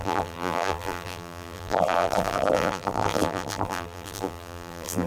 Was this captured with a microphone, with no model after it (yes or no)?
no